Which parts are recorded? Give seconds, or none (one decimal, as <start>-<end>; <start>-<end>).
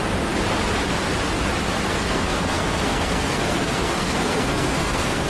0.0-1.9